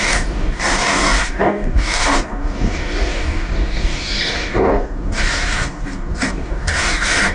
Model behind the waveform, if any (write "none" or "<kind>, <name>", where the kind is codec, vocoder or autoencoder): codec, DAC